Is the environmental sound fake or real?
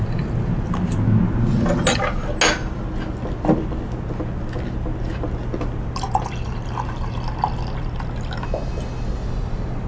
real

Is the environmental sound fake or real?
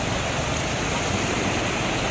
real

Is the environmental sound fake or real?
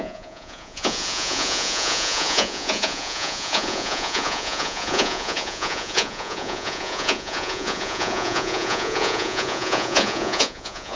fake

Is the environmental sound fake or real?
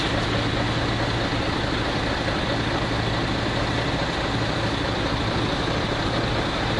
real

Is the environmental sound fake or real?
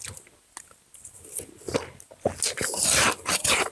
real